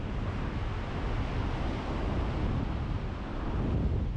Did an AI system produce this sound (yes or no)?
no